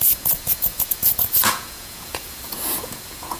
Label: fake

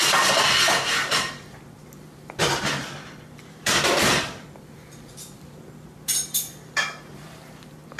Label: fake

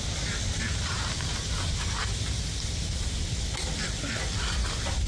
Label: real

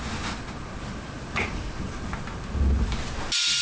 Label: real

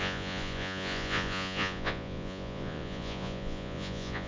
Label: fake